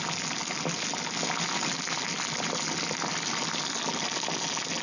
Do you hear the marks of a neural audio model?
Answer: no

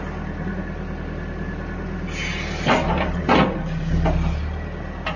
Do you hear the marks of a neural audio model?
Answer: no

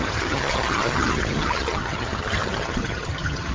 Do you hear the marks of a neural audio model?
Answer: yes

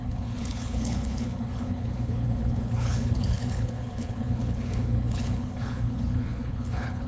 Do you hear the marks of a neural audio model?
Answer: yes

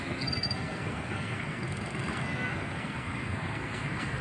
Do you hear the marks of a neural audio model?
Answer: yes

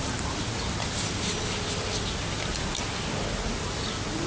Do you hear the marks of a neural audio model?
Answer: no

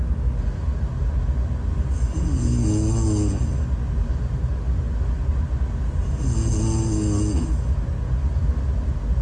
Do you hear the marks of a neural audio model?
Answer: no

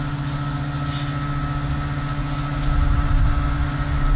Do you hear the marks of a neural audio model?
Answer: no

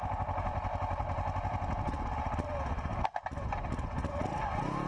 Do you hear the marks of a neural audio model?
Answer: no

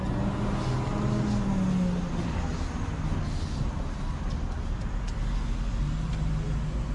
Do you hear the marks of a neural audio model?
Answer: no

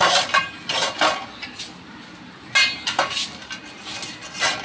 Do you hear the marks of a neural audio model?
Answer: no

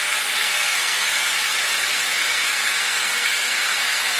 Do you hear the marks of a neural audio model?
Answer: yes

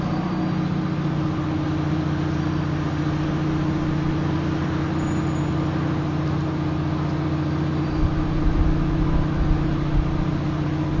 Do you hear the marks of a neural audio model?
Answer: no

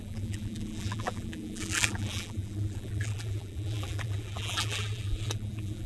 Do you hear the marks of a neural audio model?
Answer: yes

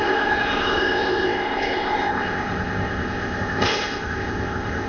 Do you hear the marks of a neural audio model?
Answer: yes